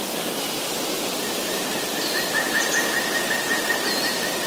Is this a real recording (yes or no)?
yes